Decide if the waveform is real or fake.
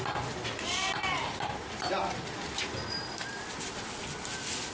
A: real